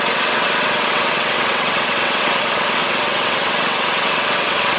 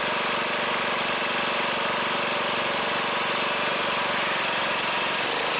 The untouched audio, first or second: second